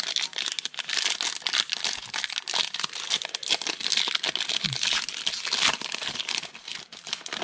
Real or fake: real